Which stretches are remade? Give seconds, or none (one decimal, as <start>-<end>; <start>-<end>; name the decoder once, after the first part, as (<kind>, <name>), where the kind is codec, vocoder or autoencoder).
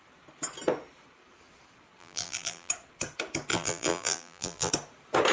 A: 2.0-2.7 (vocoder, BigVGAN v2); 3.5-4.7